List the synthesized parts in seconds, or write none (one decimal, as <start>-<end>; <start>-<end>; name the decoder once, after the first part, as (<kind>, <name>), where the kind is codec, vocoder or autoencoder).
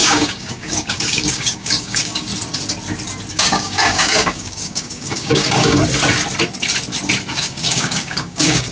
0.0-2.3 (codec, DAC); 3.3-5.8; 7.3-8.7